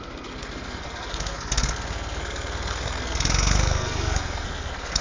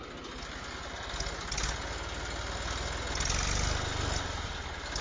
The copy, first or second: first